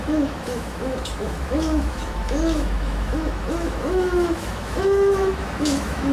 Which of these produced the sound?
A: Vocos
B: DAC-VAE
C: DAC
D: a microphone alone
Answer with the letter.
B